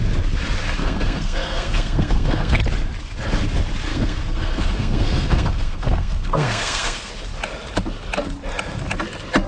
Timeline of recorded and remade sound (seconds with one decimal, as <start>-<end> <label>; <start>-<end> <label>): 0.0-0.8 recorded; 0.8-2.6 remade; 2.6-3.9 recorded; 3.9-7.1 remade; 7.1-9.5 recorded